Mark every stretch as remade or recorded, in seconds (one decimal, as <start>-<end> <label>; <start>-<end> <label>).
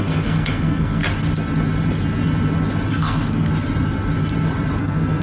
0.0-1.0 remade; 1.0-2.9 recorded; 2.9-3.5 remade; 3.5-4.8 recorded; 4.8-5.2 remade